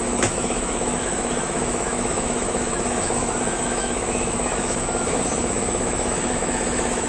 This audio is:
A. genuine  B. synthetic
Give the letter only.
B